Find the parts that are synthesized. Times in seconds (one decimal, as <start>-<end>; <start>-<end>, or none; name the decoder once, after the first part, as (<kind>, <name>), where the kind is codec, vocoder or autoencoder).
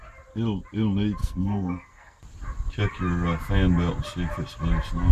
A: 1.2-2.2 (codec, SNAC)